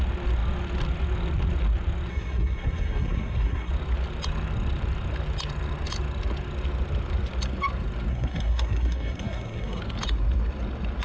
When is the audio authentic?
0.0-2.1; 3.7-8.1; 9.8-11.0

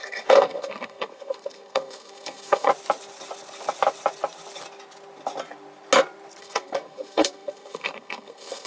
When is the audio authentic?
2.7-6.4

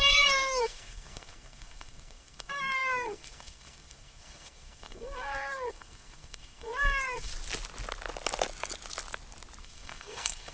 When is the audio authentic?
7.3-9.6

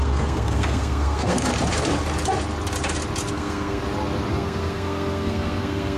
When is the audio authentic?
1.5-3.3; 3.8-4.3

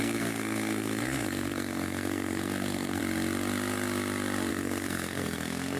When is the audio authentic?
3.0-4.5

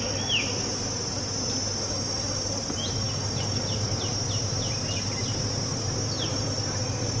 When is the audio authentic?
0.0-7.2

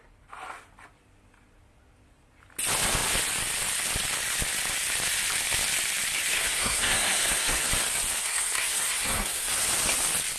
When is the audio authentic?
0.0-6.3; 7.7-8.2; 9.5-10.4

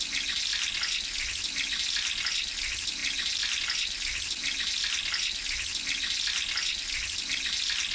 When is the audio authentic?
0.0-7.9